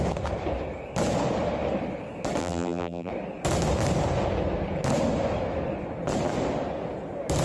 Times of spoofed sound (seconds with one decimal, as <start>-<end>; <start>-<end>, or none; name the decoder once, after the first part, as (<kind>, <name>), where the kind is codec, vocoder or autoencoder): 2.4-3.1 (vocoder, BigVGAN v2)